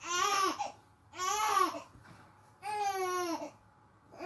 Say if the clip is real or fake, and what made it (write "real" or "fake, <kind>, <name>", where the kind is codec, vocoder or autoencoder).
real